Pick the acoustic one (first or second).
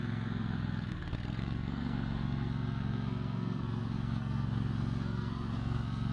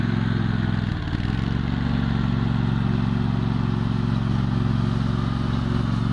second